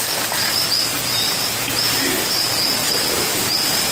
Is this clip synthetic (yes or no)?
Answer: no